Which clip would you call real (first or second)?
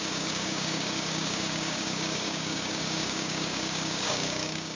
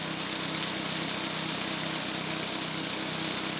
second